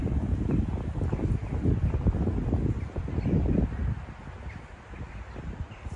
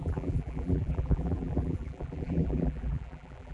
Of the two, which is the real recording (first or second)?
first